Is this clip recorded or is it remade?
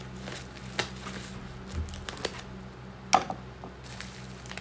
recorded